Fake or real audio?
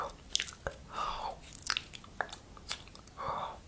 real